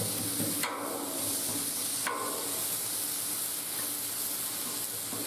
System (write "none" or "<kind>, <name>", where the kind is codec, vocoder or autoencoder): none